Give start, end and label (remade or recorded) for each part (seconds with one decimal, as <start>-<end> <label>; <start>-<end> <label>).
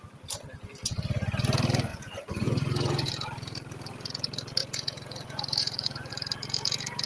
0.0-1.9 recorded; 1.9-3.1 remade; 3.1-4.6 recorded; 4.6-6.1 remade; 6.1-7.1 recorded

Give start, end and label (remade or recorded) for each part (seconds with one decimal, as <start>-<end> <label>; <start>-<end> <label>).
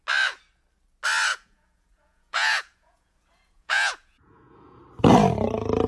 0.0-1.3 recorded; 1.3-4.8 remade; 4.8-5.9 recorded